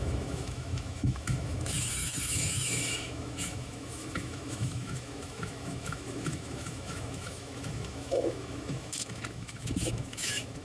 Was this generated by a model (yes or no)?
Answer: yes